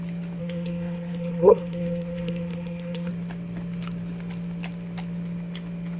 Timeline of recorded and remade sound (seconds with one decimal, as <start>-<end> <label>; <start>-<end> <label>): 0.0-0.4 recorded; 0.4-3.1 remade; 3.1-6.0 recorded